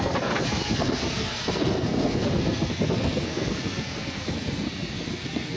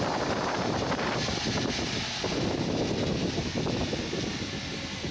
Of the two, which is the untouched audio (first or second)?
second